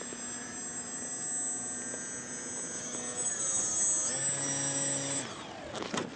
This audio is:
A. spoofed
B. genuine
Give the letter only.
B